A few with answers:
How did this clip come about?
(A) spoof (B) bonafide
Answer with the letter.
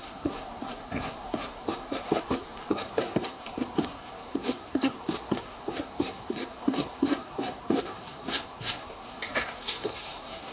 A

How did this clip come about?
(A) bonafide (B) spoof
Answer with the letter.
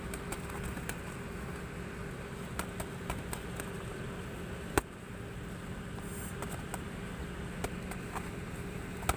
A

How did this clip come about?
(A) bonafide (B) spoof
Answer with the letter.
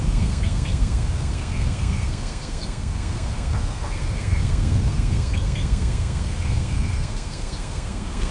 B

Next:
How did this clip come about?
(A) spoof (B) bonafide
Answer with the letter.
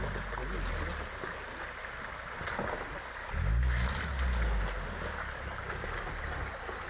B